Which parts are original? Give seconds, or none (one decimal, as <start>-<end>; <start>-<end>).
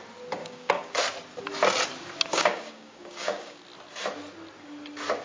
0.0-0.4; 1.0-2.3; 3.6-5.2